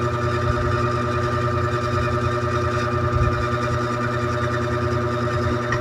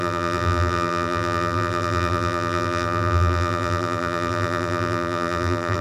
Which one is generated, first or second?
second